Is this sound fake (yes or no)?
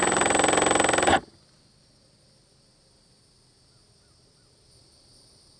no